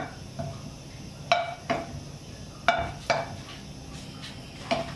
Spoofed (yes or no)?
no